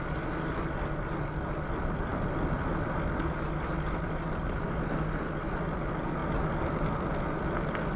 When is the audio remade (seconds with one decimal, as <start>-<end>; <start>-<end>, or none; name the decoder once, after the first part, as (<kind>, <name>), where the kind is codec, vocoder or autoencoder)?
none